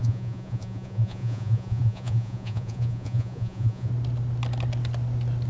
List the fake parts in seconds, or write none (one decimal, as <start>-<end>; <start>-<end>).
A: 0.0-3.9